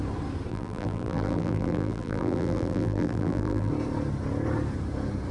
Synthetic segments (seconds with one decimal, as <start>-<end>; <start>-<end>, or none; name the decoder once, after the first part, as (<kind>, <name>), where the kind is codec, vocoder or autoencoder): 0.5-3.7 (vocoder, BigVGAN v2)